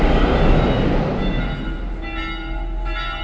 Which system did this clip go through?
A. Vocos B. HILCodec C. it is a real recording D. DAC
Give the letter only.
C